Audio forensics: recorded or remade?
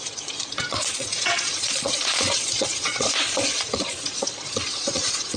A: remade